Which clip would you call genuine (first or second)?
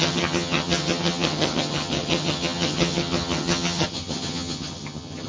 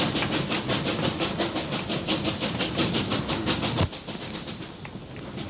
second